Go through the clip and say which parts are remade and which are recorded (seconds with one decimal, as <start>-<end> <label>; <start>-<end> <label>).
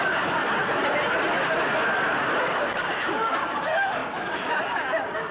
0.0-0.4 remade; 0.4-2.6 recorded; 2.6-5.3 remade